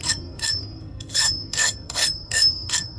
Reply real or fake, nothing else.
fake